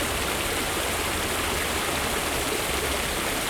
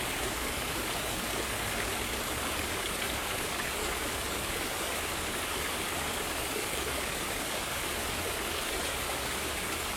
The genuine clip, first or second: first